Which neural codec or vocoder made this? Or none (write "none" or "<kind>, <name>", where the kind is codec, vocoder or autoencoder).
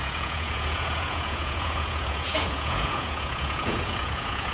vocoder, Vocos